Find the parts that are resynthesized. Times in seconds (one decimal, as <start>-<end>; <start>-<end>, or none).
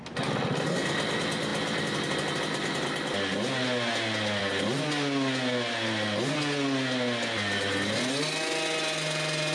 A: none